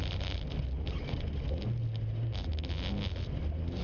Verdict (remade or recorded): recorded